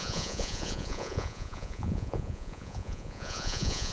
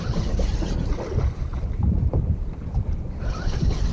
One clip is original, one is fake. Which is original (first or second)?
second